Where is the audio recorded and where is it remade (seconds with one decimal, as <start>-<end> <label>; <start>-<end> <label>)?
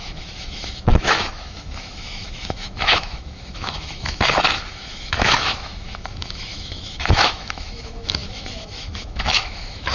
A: 0.0-9.9 remade